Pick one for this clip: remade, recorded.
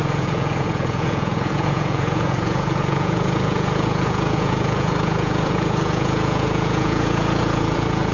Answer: remade